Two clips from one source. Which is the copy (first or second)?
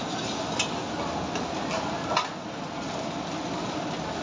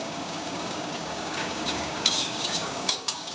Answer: second